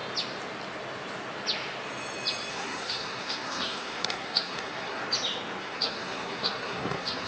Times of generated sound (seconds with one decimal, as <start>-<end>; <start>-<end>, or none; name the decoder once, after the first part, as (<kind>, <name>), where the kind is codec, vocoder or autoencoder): 2.5-5.0 (codec, SNAC); 5.6-7.3